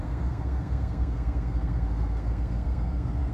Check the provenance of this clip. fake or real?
fake